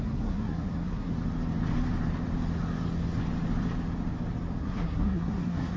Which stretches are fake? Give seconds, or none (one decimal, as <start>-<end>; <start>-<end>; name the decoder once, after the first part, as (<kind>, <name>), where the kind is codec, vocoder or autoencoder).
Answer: 0.0-1.1 (codec, SNAC); 4.6-5.8